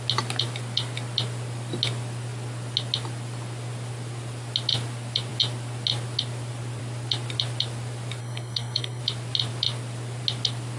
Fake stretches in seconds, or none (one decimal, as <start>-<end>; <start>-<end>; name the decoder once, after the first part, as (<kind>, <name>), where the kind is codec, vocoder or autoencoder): 8.2-9.0 (codec, SNAC)